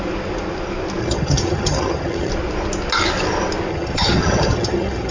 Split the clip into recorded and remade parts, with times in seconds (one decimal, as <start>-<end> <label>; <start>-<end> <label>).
0.0-1.0 recorded; 1.0-2.3 remade; 2.3-3.7 recorded; 3.7-5.1 remade

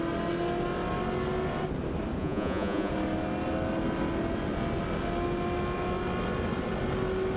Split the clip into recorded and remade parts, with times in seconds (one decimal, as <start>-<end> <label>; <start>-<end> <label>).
0.0-2.2 recorded; 2.2-2.9 remade; 2.9-7.4 recorded